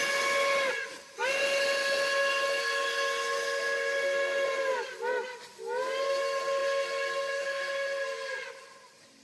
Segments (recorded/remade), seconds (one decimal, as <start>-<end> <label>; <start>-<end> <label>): 0.0-9.2 recorded